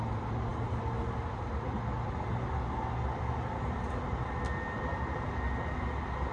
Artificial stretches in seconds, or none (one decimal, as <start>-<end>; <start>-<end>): none